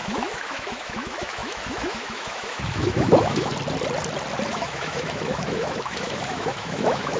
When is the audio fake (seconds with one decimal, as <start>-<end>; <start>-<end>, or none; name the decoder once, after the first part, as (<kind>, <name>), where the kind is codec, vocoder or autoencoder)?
0.0-3.5 (autoencoder, DAC-VAE); 4.5-7.2